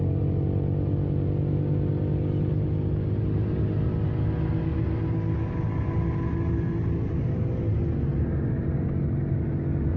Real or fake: real